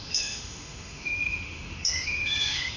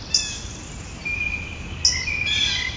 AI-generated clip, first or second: first